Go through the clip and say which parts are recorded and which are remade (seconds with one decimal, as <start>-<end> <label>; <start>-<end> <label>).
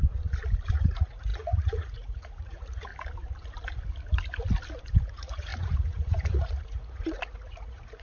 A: 0.0-0.7 recorded; 0.7-2.9 remade; 2.9-4.8 recorded; 4.8-8.0 remade